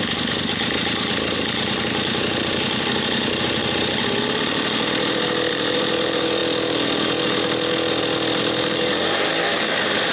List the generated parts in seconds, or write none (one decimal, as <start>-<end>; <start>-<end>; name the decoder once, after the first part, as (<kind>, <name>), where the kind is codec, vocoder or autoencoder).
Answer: 0.0-3.6 (vocoder, BigVGAN v2); 5.5-6.4; 8.4-10.1